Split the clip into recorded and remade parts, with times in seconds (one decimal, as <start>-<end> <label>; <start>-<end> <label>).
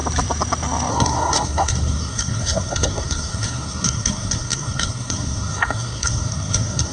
0.0-0.9 recorded; 0.9-6.9 remade